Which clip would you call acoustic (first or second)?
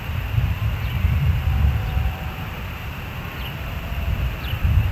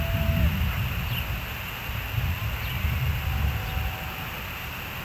second